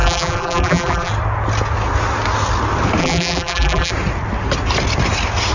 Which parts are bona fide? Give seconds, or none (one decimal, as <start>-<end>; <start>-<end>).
1.1-3.0; 3.9-5.5